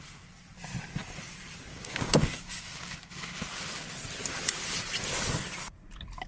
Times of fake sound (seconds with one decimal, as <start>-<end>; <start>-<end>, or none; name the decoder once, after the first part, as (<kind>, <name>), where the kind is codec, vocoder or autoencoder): 1.7-3.1 (codec, DAC)

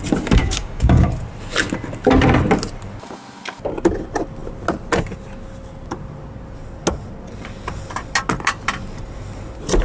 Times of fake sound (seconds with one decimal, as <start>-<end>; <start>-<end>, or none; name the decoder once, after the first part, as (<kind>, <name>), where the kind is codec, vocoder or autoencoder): 0.4-1.1 (codec, DAC)